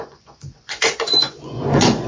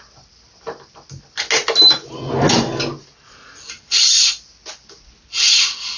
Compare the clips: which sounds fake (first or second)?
first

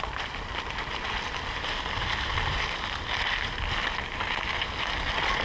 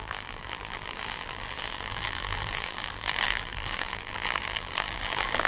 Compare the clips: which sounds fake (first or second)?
second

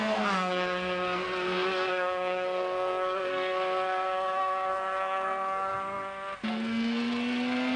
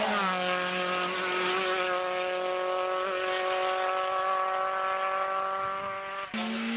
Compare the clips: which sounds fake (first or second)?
first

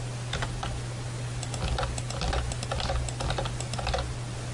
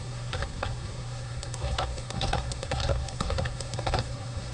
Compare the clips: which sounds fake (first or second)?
second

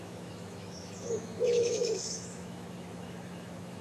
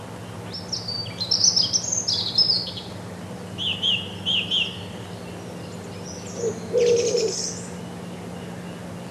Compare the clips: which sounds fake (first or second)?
first